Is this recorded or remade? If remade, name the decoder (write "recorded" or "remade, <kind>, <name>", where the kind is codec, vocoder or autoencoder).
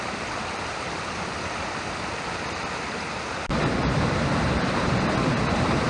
recorded